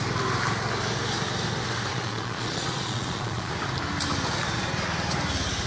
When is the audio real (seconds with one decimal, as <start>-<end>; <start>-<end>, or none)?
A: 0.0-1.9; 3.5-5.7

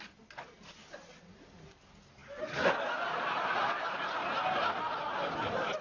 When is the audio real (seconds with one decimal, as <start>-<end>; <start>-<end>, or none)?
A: 0.0-5.8

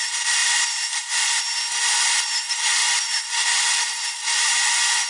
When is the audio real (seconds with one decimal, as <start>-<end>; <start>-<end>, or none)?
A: 0.0-0.4; 1.4-2.8; 4.5-5.1

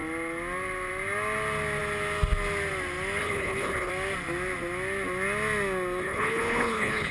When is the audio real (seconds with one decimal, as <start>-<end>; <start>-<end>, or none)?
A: 0.0-3.2; 3.9-6.0

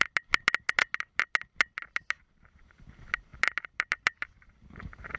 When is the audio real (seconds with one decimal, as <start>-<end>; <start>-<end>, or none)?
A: 0.0-5.2

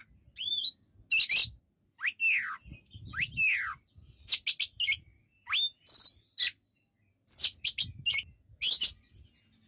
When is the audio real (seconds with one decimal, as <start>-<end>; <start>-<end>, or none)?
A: 0.0-9.7